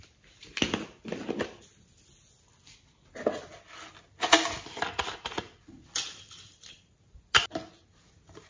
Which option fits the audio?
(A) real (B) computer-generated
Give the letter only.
A